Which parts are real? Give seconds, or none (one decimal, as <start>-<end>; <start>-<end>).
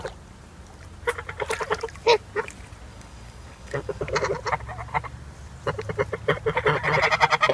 0.0-2.9; 4.0-7.5